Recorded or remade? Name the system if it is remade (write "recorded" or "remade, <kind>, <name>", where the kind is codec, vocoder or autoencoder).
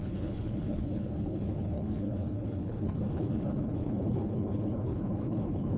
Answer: remade, codec, HILCodec